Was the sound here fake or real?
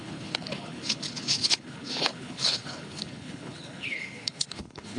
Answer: fake